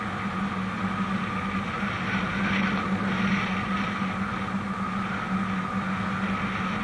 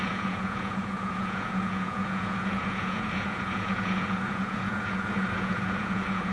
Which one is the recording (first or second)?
first